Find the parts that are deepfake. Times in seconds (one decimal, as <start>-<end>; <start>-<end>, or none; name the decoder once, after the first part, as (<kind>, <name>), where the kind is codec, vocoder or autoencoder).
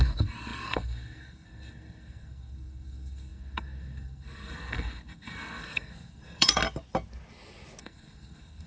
0.0-6.6 (codec, SNAC); 7.8-8.7